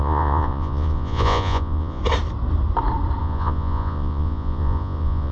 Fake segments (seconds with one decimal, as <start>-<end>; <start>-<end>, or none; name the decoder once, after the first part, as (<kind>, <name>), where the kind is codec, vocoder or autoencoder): 0.0-2.0 (vocoder, Vocos); 3.2-5.3